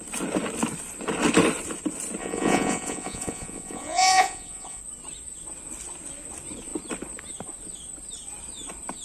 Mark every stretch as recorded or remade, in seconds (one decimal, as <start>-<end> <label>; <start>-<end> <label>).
0.0-2.2 recorded; 2.2-4.8 remade; 4.8-9.0 recorded